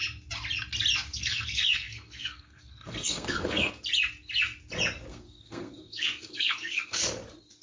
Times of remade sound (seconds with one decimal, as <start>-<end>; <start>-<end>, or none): 1.1-3.7; 5.1-7.0